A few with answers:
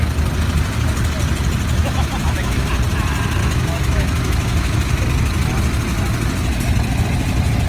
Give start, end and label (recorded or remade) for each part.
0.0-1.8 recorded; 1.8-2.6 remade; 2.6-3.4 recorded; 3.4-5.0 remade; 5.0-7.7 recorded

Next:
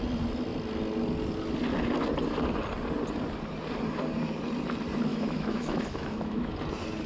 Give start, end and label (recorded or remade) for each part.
0.0-5.1 recorded; 5.1-6.5 remade; 6.5-7.1 recorded

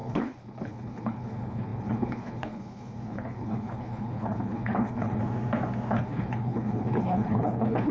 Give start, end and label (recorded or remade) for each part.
0.0-5.2 remade; 5.2-5.9 recorded; 5.9-7.9 remade

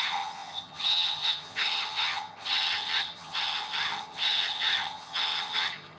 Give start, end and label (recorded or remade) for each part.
0.0-6.0 remade

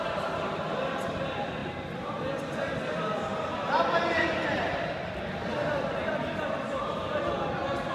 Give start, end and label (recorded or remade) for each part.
0.0-7.9 recorded

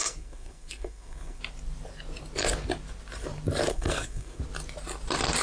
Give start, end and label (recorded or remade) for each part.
0.0-1.4 remade; 1.4-3.7 recorded; 3.7-4.4 remade; 4.4-5.4 recorded

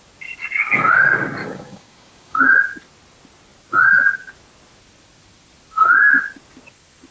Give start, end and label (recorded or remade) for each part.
0.0-1.4 recorded; 1.4-2.6 remade; 2.6-7.1 recorded

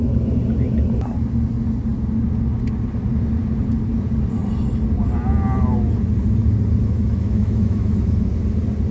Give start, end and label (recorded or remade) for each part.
0.0-6.8 recorded; 6.8-8.3 remade; 8.3-8.9 recorded